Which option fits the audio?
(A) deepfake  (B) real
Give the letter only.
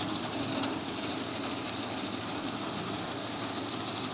B